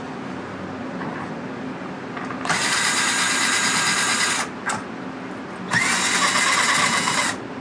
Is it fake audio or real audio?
real